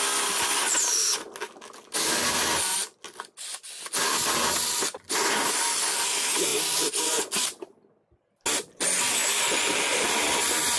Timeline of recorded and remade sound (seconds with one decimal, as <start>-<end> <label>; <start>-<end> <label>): 0.0-10.8 recorded